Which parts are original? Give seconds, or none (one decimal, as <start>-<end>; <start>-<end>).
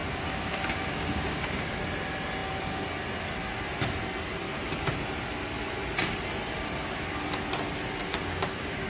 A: 1.7-8.0